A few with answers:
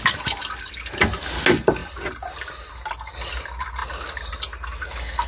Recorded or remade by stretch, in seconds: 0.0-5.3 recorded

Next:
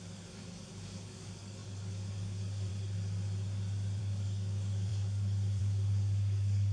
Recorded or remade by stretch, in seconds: 0.0-2.7 remade; 2.7-4.0 recorded; 4.0-6.7 remade